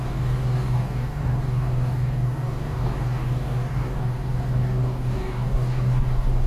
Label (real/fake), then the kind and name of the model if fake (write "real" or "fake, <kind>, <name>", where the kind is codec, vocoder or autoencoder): fake, codec, DAC